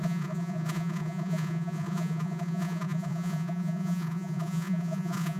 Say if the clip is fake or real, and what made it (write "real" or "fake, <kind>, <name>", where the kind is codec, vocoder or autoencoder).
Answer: fake, vocoder, Vocos